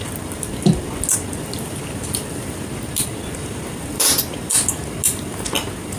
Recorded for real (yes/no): yes